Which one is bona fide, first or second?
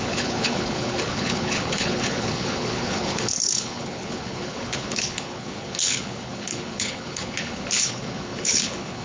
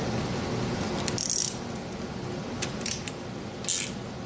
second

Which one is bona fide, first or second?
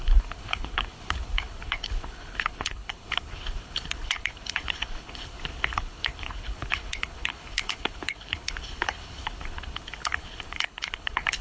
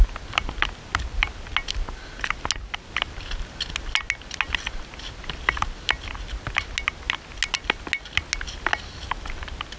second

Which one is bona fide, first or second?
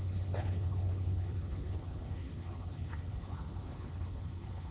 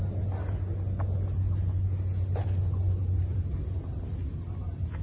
second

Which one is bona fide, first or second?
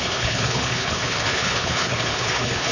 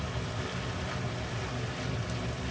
second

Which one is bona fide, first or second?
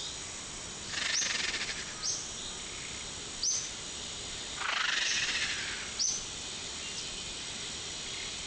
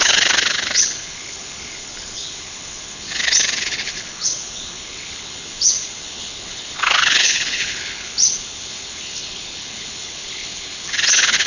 first